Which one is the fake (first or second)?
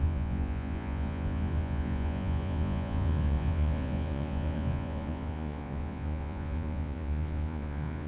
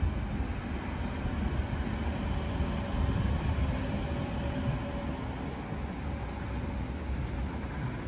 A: first